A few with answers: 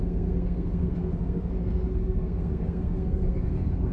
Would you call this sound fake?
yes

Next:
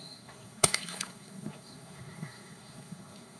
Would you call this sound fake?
yes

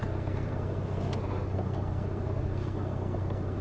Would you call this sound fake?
yes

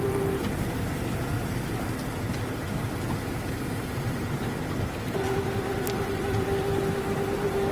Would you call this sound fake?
no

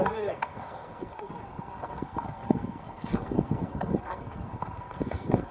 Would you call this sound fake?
yes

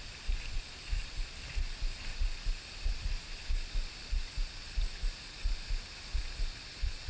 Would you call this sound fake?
no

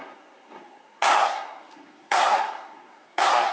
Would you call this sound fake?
yes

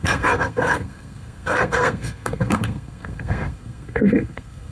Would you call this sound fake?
yes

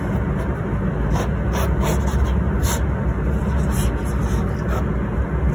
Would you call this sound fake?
no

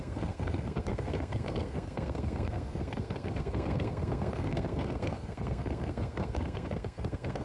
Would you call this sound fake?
yes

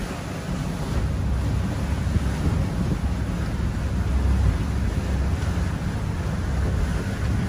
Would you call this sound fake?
no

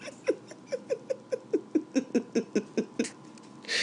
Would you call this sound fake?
no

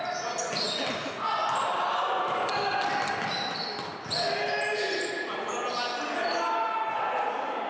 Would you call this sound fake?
no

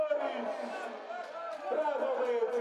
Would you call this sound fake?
no